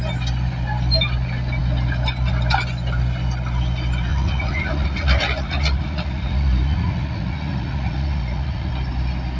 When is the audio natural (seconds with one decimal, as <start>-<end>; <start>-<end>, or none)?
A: 0.0-4.1; 8.7-9.4

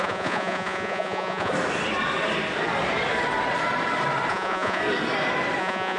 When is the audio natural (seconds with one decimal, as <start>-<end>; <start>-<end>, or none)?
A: 1.5-4.3; 4.8-5.6

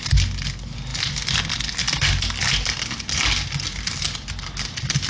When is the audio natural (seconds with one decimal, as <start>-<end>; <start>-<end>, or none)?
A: 0.0-5.1

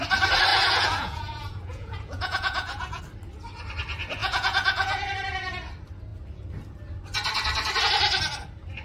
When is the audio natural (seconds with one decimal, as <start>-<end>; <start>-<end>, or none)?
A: 0.0-0.5; 3.0-4.2; 5.1-8.8